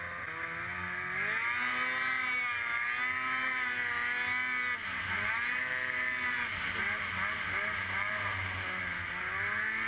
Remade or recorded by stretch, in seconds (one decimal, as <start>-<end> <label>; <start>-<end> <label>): 0.0-9.9 recorded